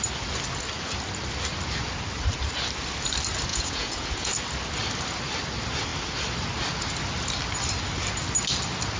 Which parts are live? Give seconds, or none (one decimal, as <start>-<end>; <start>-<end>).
0.0-3.5; 4.3-9.0